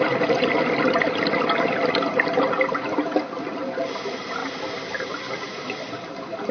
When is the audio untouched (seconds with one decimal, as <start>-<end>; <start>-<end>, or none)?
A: 0.0-6.5